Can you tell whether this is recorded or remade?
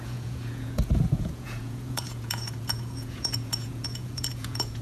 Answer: remade